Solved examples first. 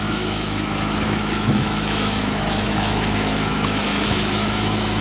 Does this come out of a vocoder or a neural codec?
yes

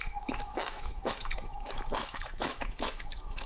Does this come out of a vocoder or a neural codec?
yes